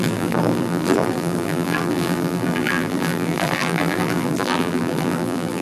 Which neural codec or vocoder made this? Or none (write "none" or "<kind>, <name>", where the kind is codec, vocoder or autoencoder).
vocoder, BigVGAN v2